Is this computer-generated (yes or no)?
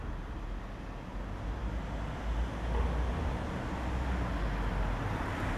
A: no